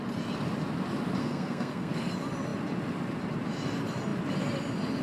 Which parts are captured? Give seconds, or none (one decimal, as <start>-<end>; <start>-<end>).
0.0-1.2; 1.9-5.0